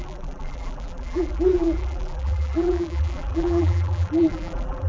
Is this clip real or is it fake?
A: fake